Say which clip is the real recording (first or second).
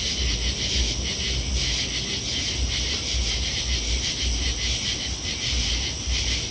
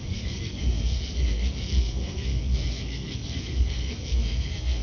first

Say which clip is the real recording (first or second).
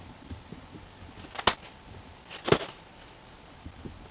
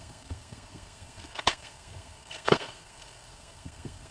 first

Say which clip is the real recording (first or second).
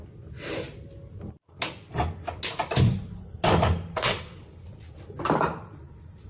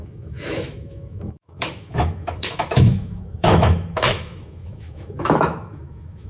first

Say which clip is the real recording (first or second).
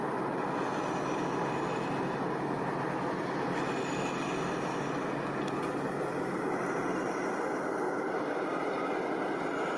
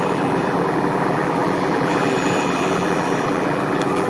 first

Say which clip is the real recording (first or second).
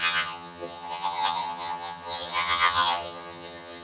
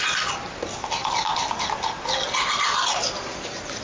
second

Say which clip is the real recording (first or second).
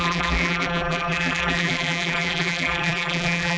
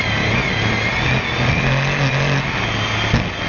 second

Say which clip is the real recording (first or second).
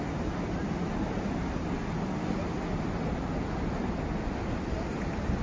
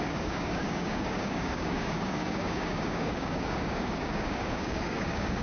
first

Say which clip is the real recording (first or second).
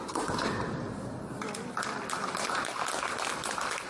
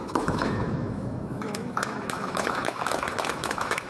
first